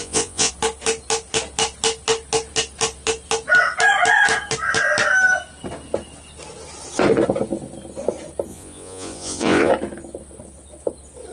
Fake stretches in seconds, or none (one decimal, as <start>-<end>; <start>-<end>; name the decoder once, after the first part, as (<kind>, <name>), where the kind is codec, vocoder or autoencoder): 0.0-0.5 (vocoder, Vocos); 8.5-9.7